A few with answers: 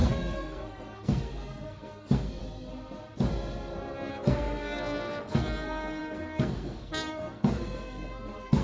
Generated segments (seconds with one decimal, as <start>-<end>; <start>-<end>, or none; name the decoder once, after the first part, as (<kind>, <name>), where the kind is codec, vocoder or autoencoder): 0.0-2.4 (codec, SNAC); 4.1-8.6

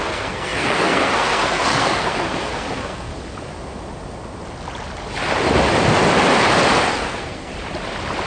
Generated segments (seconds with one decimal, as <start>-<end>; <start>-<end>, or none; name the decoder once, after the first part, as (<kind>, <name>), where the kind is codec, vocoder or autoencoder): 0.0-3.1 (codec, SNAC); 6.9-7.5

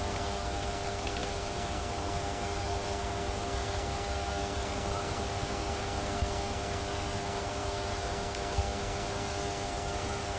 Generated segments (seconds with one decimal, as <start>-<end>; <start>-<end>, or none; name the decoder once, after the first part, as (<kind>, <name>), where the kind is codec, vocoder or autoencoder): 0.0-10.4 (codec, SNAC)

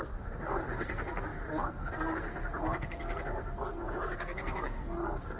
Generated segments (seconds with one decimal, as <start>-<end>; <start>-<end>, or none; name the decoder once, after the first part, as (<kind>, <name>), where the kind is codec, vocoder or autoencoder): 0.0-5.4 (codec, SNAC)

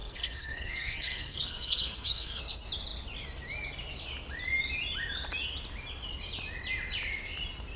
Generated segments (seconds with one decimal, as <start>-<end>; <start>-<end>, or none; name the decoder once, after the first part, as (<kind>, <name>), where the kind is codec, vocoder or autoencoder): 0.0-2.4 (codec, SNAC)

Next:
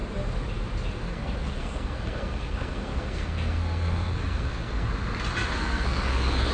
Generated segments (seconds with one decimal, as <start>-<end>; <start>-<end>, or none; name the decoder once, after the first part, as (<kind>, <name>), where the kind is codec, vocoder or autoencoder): 1.0-4.9 (codec, SNAC); 5.6-6.5